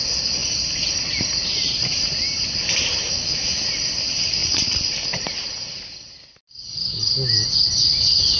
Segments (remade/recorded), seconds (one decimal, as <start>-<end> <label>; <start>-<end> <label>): 0.0-3.0 recorded; 3.0-3.6 remade; 3.6-8.4 recorded